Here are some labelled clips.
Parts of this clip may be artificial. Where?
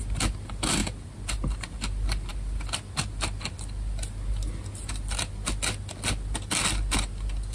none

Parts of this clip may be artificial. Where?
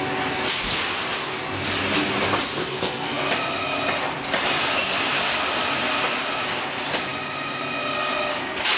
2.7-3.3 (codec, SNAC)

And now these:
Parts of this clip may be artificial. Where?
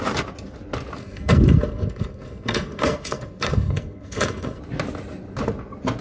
1.0-4.6 (codec, SNAC)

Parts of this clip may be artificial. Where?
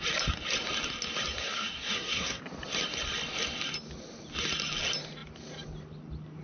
1.4-2.4 (codec, SNAC)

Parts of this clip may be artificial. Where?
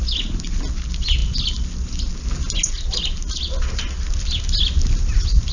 none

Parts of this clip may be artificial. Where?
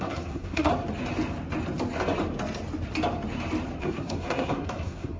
0.0-0.7 (codec, SNAC); 3.8-5.2